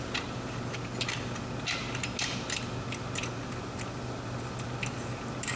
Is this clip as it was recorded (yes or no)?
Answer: yes